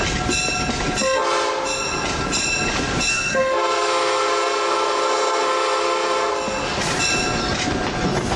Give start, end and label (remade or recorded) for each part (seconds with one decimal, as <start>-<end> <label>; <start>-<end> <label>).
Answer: 0.0-3.1 recorded; 3.1-6.3 remade; 6.3-8.4 recorded